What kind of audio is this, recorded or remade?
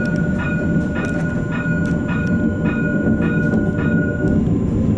recorded